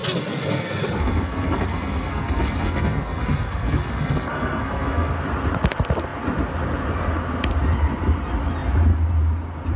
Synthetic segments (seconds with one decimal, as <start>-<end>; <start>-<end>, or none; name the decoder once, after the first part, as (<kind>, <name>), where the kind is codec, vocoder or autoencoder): 0.0-5.1 (codec, SNAC)